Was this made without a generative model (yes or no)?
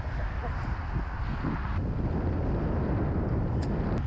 yes